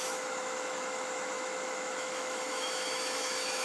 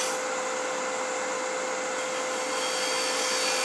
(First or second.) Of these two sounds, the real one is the second